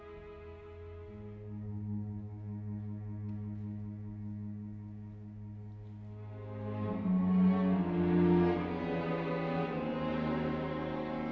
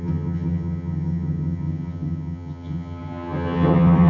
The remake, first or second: second